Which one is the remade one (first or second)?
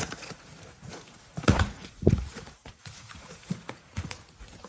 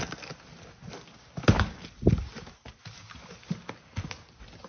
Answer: first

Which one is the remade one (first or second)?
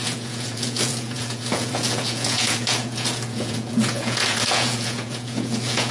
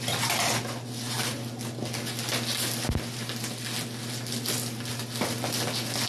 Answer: first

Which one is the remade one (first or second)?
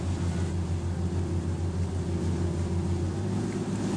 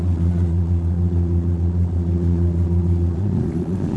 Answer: second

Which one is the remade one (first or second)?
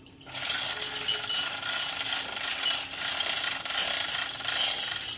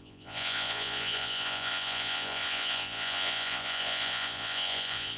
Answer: second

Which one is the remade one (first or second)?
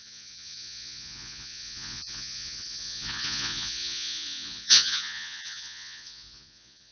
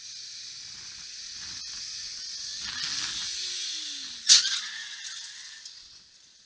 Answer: first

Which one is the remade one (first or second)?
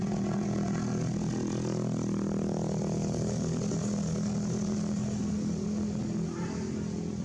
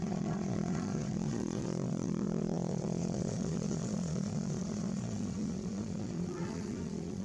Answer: second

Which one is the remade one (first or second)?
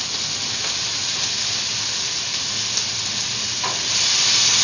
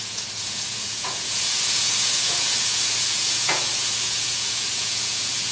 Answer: second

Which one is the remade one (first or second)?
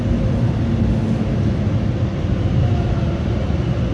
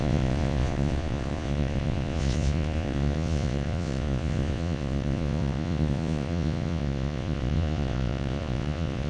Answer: second